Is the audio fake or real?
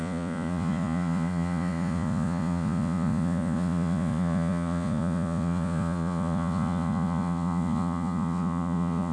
fake